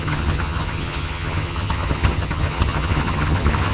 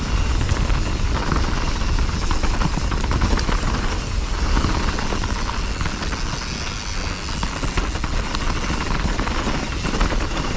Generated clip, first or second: first